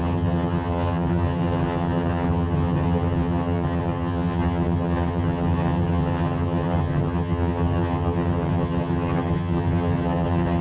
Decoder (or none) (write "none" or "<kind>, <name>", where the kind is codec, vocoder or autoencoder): vocoder, HiFi-GAN